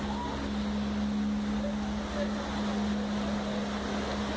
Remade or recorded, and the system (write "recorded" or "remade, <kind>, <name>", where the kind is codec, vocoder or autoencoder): recorded